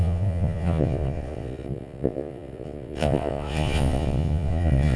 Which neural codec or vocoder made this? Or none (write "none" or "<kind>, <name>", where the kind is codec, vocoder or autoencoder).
vocoder, Vocos